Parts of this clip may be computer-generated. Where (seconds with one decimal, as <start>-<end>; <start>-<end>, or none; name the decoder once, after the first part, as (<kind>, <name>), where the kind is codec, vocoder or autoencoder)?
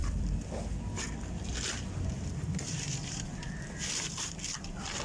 0.0-5.0 (vocoder, BigVGAN v2)